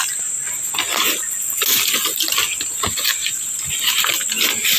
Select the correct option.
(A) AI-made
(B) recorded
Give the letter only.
B